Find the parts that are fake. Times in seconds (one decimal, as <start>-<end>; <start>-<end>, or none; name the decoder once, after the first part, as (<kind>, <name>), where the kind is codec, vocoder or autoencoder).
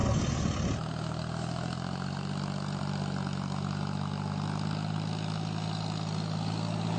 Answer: none